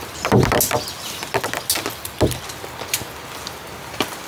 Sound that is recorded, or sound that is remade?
recorded